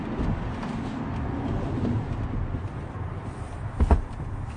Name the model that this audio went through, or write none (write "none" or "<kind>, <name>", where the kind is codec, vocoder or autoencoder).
none